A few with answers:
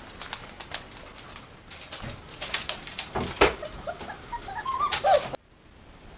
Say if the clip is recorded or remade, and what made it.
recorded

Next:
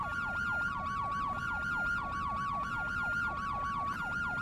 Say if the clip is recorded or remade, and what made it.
recorded